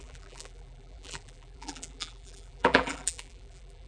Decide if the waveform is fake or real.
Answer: fake